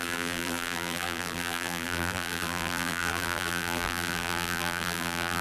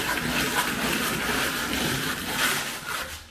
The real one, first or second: second